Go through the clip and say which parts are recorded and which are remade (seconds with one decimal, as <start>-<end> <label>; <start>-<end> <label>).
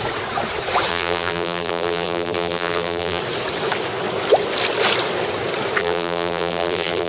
0.0-0.9 recorded; 0.9-3.2 remade; 3.2-5.8 recorded; 5.8-7.1 remade